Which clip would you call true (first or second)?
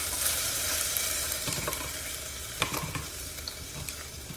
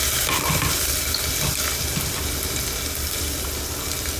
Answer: second